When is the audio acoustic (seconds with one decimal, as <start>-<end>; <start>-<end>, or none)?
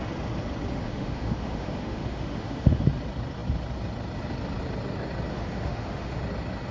0.0-0.7; 2.8-5.3; 6.2-6.7